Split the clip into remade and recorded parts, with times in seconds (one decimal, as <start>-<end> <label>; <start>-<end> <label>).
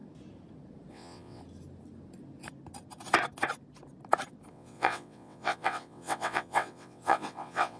0.0-0.9 recorded; 0.9-1.4 remade; 1.4-4.5 recorded; 4.5-7.8 remade